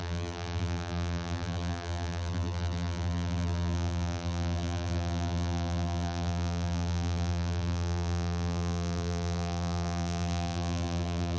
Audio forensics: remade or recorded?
remade